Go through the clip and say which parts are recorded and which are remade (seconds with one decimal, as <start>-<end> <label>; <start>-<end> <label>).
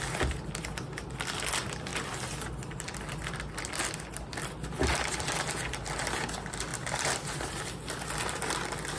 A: 0.0-9.0 recorded